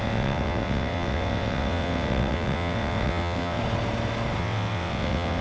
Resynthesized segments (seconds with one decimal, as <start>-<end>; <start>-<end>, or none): 0.0-3.6; 4.4-5.4